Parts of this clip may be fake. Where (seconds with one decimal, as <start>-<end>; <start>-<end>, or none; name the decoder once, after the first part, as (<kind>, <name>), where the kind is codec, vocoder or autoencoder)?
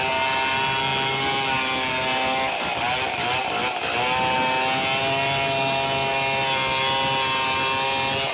none